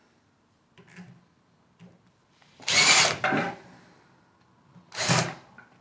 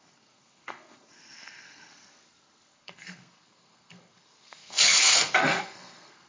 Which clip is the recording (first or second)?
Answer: first